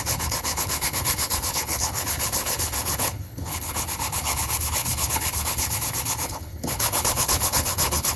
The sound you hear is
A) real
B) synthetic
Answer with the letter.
B